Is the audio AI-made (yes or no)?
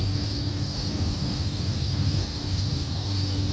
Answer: yes